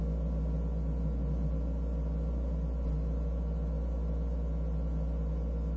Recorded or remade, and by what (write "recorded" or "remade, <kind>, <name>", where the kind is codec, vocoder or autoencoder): recorded